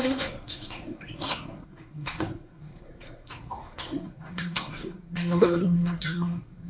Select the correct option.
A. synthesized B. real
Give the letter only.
A